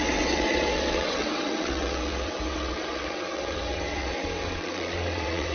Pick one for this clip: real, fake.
fake